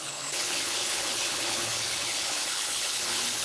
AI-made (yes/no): yes